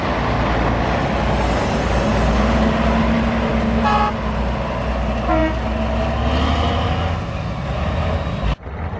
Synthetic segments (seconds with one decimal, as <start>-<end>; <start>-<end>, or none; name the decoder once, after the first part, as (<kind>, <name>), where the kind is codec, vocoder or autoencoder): none